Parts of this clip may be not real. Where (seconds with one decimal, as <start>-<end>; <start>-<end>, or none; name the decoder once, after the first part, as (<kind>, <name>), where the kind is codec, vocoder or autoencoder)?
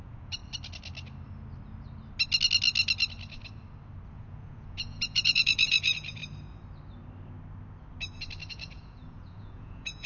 0.0-0.4 (vocoder, Vocos); 4.1-6.2; 8.5-10.1